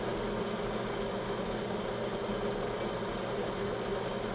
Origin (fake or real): real